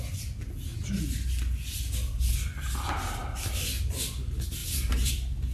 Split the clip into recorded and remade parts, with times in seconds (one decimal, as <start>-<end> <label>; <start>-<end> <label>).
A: 0.0-4.6 recorded; 4.6-5.1 remade; 5.1-5.5 recorded